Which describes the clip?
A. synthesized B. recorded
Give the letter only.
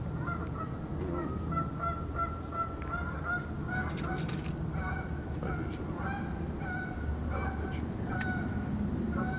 B